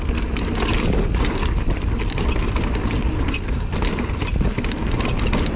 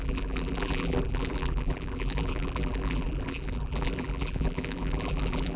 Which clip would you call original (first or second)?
first